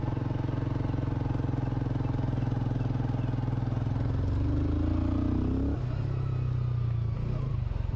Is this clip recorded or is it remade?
recorded